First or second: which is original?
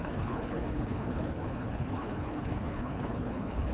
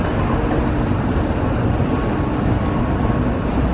second